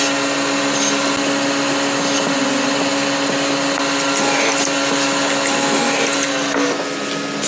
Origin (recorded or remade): recorded